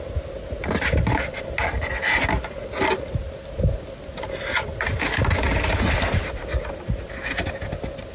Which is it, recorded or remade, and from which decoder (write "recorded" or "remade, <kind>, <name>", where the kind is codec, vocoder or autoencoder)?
recorded